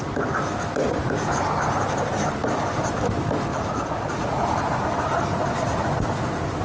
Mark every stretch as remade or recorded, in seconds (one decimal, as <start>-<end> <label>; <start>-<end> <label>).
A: 0.0-3.5 recorded; 3.5-4.8 remade; 4.8-6.6 recorded